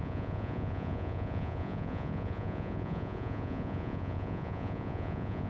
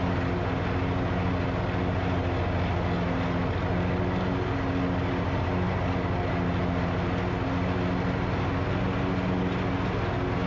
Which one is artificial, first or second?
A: first